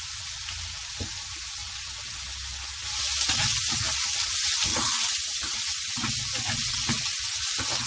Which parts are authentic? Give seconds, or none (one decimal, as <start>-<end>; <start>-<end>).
0.0-4.7; 5.9-7.9